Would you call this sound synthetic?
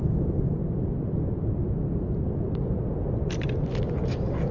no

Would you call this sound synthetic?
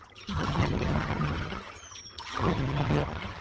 yes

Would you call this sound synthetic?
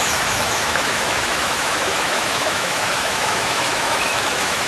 yes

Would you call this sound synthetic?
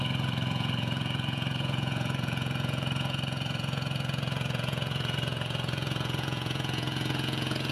yes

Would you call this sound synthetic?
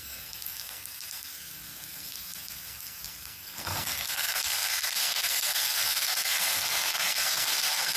yes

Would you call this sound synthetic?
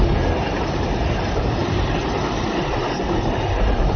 no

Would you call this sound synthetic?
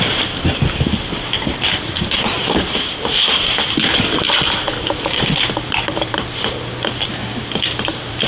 yes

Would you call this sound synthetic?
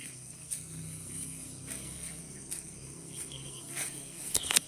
yes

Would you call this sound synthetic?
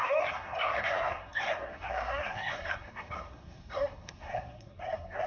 yes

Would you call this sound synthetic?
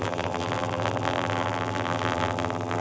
yes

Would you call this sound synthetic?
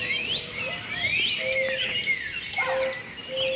no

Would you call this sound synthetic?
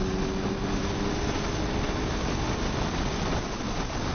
no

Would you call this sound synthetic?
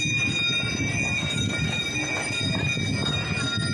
no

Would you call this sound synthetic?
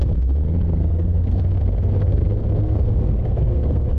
yes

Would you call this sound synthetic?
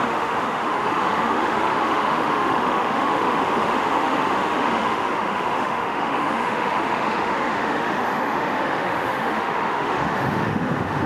yes